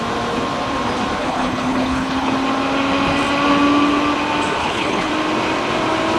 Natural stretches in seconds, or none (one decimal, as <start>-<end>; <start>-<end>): 0.0-1.2; 2.3-4.6; 5.1-6.2